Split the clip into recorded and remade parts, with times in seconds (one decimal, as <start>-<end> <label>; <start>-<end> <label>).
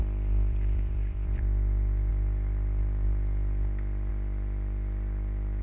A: 0.0-2.1 remade; 2.1-4.1 recorded; 4.1-5.6 remade